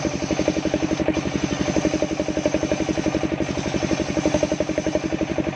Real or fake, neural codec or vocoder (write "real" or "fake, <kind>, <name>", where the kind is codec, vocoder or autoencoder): real